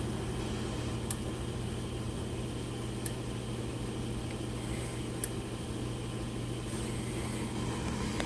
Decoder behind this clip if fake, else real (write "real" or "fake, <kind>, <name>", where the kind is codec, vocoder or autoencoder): real